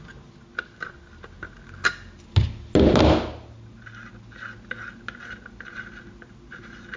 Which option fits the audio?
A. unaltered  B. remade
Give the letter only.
A